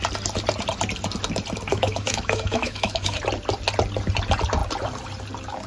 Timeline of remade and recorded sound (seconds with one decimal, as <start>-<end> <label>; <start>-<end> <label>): 0.0-1.7 recorded; 1.7-3.2 remade; 3.2-5.7 recorded

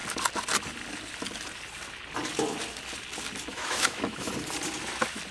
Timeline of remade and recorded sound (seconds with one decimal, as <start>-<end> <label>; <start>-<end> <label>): 0.0-3.5 recorded; 3.5-4.3 remade; 4.3-5.3 recorded

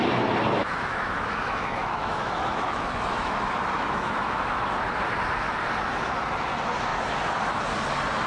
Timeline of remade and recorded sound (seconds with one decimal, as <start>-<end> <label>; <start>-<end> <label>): 0.0-0.6 recorded; 0.6-4.7 remade; 4.7-8.3 recorded

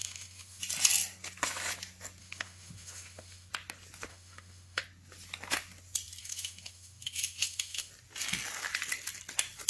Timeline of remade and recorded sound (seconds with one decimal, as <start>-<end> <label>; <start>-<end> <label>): 0.0-0.6 remade; 0.6-2.2 recorded; 2.2-3.5 remade; 3.5-4.1 recorded; 4.1-4.8 remade; 4.8-6.2 recorded; 6.2-7.9 remade; 7.9-9.7 recorded

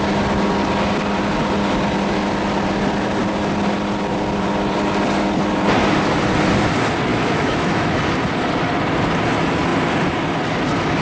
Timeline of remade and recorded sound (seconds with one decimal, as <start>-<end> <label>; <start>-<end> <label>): 0.0-7.1 recorded; 7.1-8.0 remade; 8.0-11.0 recorded

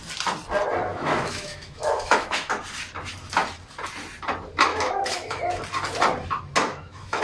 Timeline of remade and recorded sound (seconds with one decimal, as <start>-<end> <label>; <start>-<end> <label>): 0.0-0.9 recorded; 0.9-2.5 remade; 2.5-4.7 recorded; 4.7-5.4 remade; 5.4-6.7 recorded; 6.7-7.2 remade

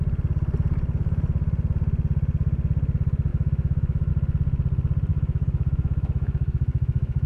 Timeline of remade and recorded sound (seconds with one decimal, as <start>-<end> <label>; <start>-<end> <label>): 0.0-3.3 recorded; 3.3-4.1 remade; 4.1-5.1 recorded; 5.1-7.3 remade